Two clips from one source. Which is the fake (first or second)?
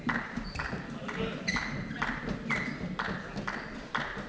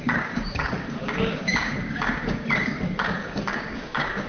second